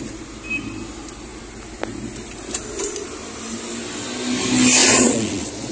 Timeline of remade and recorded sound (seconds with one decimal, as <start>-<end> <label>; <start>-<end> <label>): 0.0-4.8 recorded; 4.8-5.7 remade